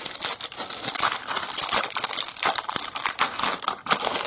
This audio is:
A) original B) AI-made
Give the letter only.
A